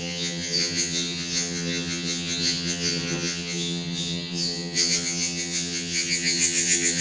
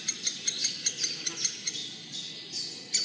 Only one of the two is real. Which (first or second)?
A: second